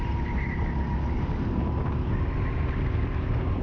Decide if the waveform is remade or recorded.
recorded